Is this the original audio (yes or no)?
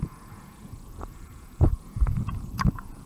no